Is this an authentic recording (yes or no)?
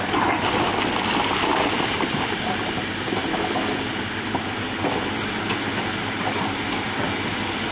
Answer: yes